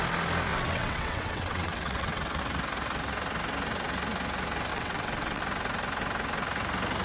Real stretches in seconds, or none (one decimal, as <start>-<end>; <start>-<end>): 0.0-0.5; 2.4-4.7; 5.4-7.0